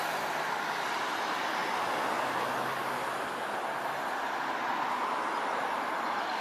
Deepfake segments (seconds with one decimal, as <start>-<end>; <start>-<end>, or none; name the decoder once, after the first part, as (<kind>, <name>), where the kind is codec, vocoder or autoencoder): none